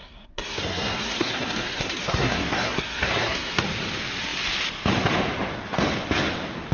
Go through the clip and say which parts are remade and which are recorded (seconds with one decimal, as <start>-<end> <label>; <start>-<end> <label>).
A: 0.0-3.6 remade; 3.6-6.7 recorded